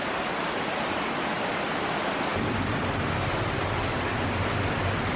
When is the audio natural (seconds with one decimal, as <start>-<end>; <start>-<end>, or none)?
0.0-5.2

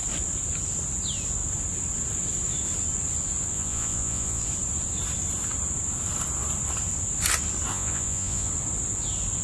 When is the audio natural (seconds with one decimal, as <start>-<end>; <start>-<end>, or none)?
0.0-3.5; 4.4-7.7; 8.5-9.4

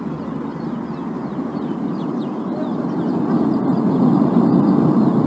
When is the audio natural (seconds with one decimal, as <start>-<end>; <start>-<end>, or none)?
0.0-5.3

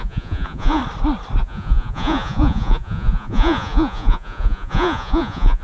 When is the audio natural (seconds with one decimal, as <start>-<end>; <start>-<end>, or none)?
0.8-1.4